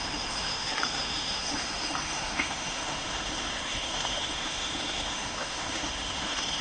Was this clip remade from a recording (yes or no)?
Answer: yes